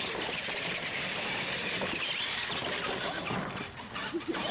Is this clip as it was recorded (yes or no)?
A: yes